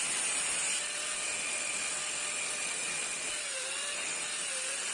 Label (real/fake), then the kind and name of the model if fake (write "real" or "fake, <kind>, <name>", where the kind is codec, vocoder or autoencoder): real